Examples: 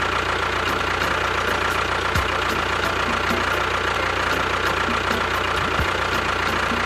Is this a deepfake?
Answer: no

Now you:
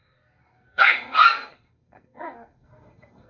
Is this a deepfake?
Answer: yes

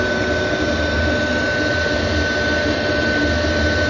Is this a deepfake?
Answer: no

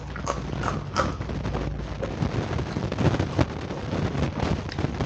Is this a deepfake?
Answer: no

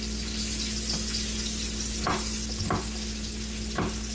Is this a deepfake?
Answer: no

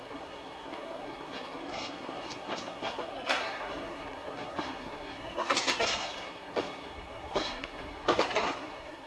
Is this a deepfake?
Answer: yes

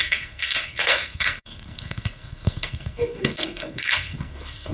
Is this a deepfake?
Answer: yes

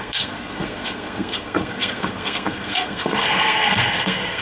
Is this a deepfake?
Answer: yes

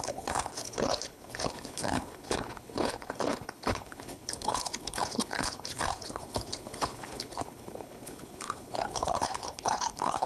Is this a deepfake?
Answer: yes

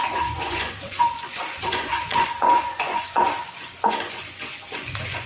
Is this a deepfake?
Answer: yes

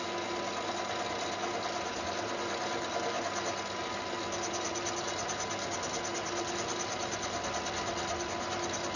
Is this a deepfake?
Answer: no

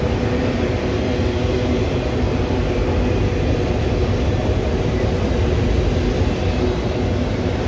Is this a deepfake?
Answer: no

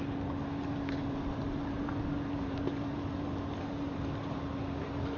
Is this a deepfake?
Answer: no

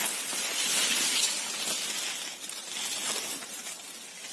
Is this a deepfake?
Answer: no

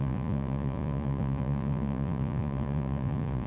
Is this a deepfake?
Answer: yes